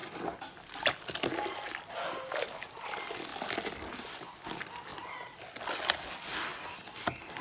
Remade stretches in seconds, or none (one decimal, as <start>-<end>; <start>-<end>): 3.3-4.4